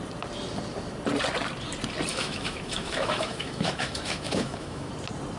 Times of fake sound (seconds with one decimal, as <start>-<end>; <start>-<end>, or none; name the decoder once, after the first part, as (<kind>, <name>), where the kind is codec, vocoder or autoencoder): 2.1-4.9 (autoencoder, DAC-VAE)